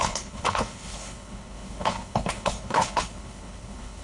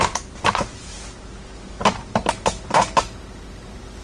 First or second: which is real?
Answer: second